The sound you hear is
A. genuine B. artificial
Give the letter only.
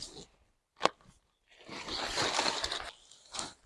A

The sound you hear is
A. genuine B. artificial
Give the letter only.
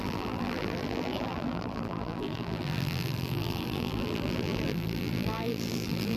B